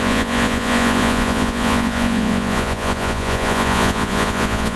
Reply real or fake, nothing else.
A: fake